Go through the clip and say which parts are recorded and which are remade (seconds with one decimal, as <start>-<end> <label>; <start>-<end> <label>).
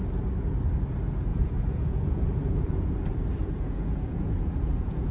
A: 0.0-1.3 recorded; 1.3-2.9 remade; 2.9-3.4 recorded; 3.4-5.1 remade